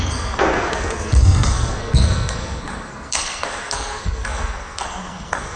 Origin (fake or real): fake